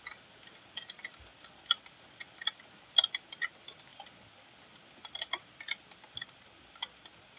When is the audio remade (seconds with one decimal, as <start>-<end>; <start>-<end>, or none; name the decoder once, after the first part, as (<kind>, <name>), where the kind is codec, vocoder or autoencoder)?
none